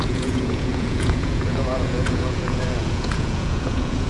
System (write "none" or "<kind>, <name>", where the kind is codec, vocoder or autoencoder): vocoder, Vocos